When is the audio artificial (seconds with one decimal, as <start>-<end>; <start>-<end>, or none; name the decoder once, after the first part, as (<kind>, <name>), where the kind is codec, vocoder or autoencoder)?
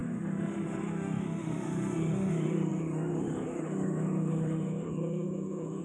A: 0.0-5.8 (autoencoder, DAC-VAE)